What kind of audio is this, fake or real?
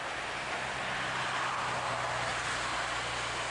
real